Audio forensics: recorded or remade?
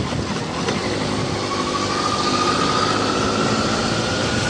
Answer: recorded